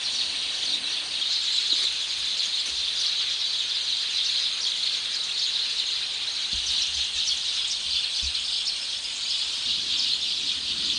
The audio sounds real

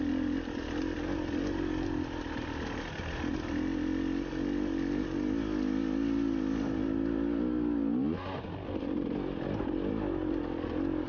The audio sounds real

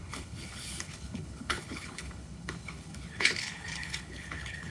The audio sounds fake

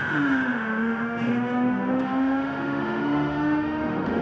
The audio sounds fake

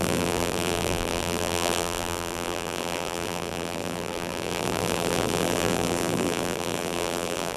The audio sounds fake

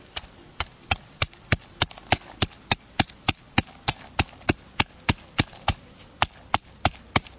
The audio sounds real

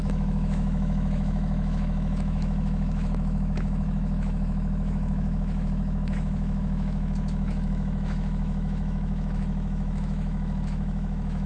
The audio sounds fake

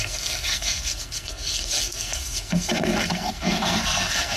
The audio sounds fake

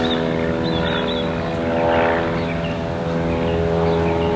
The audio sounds real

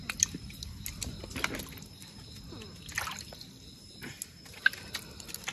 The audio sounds real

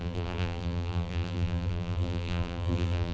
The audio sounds fake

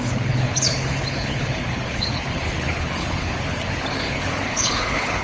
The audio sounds fake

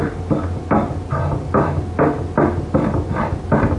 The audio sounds real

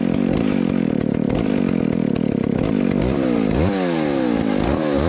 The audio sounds real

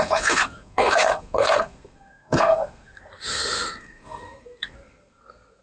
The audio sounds fake